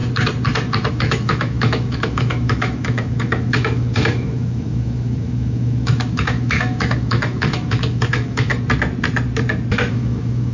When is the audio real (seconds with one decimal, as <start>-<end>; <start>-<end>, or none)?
0.0-0.9; 8.5-9.9